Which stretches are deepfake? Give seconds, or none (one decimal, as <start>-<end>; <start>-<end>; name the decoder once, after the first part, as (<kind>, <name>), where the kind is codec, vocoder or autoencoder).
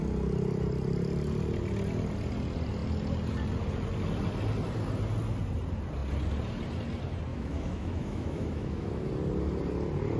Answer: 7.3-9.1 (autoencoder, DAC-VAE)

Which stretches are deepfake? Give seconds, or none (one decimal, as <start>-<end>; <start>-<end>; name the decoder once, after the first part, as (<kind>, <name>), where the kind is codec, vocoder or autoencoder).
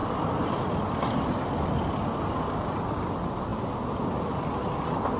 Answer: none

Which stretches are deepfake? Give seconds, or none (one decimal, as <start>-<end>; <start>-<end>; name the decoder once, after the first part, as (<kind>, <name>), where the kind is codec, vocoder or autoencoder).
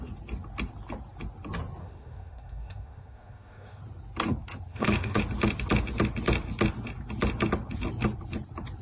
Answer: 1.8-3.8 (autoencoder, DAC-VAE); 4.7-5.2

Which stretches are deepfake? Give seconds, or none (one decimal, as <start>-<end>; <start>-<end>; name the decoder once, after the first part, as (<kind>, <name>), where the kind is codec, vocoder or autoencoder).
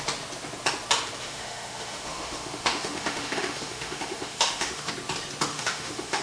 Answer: 1.2-4.9 (autoencoder, DAC-VAE); 5.5-6.2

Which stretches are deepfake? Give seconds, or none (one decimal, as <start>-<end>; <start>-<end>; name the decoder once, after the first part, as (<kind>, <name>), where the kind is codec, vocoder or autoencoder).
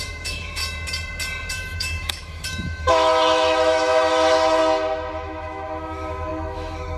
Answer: 0.0-0.6 (autoencoder, DAC-VAE); 1.5-4.6; 5.1-7.0